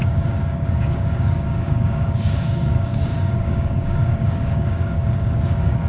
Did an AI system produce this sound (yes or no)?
yes